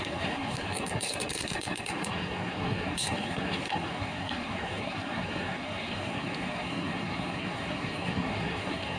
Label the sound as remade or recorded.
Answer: remade